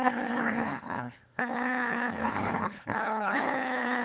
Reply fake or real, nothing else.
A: fake